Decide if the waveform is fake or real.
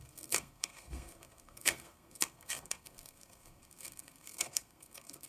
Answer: fake